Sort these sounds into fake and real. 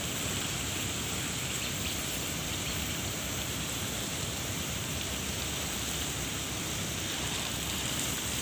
fake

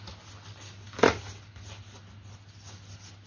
real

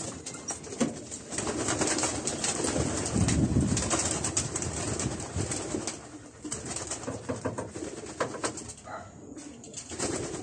real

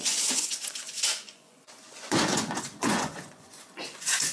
fake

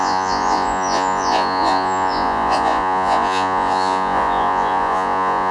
fake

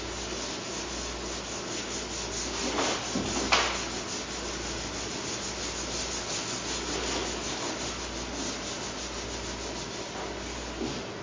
real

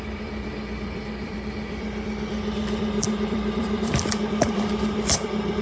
fake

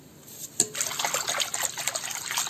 real